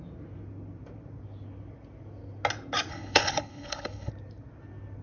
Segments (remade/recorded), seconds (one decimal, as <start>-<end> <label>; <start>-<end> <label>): 0.0-2.9 recorded; 2.9-4.1 remade; 4.1-5.0 recorded